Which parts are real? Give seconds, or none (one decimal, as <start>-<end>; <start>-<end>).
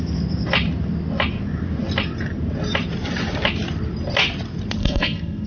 0.0-4.8